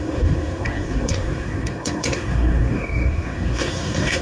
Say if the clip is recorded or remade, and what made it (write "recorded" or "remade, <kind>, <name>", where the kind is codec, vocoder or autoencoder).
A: remade, codec, SNAC